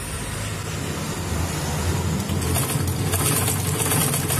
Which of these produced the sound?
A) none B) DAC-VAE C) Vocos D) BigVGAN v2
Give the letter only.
A